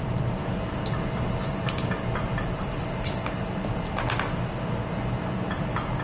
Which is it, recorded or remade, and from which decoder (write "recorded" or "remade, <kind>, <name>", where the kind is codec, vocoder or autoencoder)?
recorded